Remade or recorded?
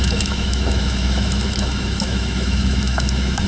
remade